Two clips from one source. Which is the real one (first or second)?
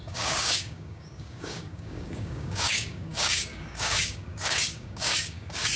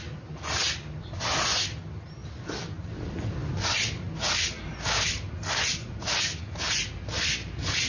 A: second